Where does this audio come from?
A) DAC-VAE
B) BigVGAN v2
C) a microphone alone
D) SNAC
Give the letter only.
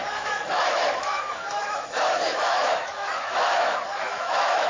A